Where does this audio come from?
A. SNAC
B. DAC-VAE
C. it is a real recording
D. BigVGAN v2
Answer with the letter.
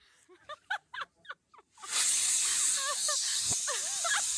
C